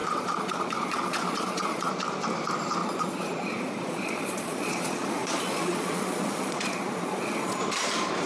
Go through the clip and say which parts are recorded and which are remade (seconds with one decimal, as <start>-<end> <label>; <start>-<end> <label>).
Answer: 0.0-1.9 remade; 1.9-2.8 recorded; 2.8-7.6 remade; 7.6-8.3 recorded